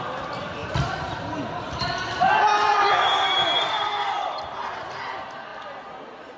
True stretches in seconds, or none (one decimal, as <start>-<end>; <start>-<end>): 0.0-0.6; 4.4-6.4